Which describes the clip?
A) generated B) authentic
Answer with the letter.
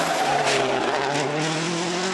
B